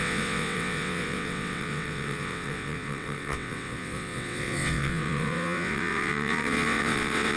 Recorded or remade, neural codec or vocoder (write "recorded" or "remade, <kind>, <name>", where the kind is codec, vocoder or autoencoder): remade, vocoder, WaveNeXt